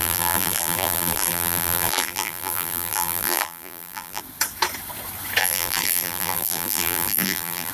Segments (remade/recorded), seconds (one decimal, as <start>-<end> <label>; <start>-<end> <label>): 0.0-4.2 remade; 4.2-5.4 recorded; 5.4-7.7 remade